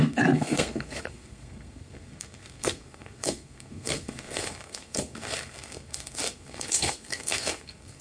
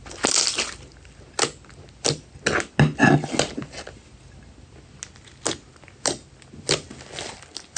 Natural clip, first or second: second